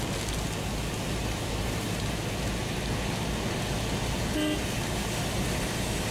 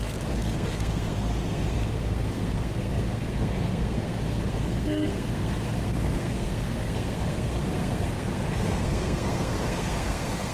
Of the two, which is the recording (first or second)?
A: first